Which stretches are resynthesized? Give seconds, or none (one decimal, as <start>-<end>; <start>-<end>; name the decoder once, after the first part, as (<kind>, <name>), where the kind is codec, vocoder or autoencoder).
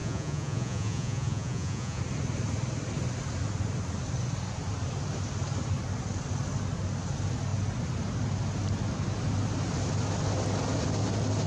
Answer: 0.0-2.0 (vocoder, Vocos)